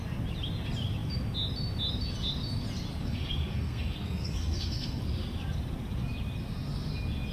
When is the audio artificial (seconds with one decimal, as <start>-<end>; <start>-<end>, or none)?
3.0-5.0